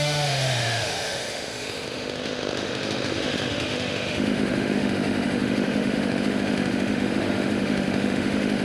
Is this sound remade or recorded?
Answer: remade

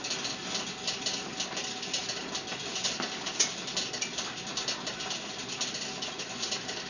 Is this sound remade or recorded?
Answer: recorded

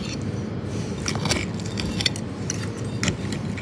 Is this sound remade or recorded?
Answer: recorded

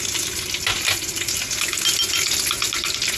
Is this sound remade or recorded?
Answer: recorded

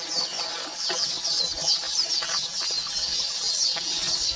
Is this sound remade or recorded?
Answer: recorded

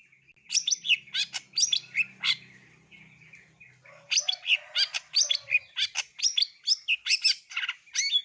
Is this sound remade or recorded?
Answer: recorded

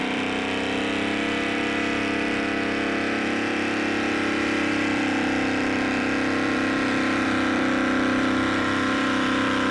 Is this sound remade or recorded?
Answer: remade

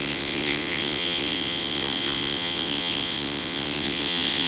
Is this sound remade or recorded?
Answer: remade